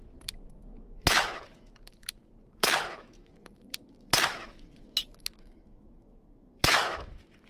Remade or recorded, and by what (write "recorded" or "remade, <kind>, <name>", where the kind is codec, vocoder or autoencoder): remade, autoencoder, DAC-VAE